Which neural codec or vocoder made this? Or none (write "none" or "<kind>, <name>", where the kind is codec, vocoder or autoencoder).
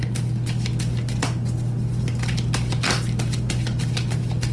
none